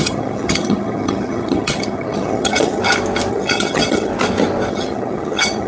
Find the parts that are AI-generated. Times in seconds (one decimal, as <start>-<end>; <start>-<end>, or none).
0.0-2.8; 3.3-4.1; 4.7-5.7